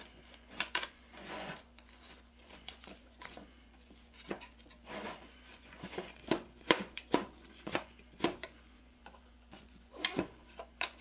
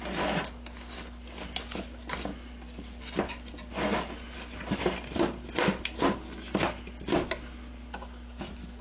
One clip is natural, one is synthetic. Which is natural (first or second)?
second